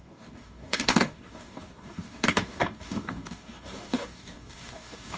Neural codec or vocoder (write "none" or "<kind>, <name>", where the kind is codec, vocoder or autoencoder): codec, DAC